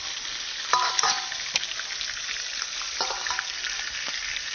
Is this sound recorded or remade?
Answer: recorded